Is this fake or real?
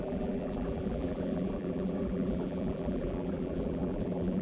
fake